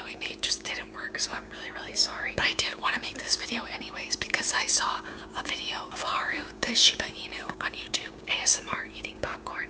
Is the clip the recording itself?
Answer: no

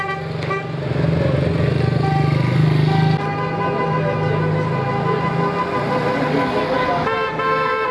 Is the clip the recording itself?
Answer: yes